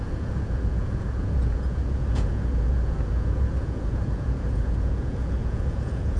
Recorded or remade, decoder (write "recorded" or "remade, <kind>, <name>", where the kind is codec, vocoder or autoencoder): remade, vocoder, Vocos